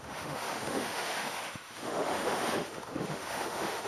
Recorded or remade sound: remade